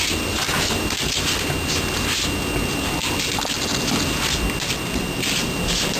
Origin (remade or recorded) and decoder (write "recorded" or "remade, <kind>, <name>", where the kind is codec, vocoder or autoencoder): recorded